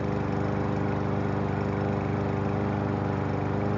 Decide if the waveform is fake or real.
real